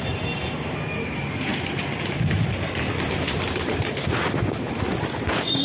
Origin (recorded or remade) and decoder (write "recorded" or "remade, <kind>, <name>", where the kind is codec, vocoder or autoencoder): recorded